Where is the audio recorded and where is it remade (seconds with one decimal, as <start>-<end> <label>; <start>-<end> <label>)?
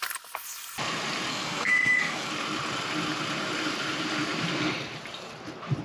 0.0-1.3 recorded; 1.3-2.3 remade; 2.3-5.8 recorded